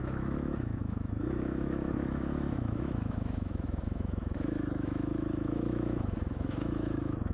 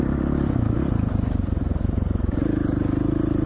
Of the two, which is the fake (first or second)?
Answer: first